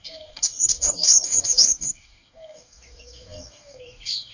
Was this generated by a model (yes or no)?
yes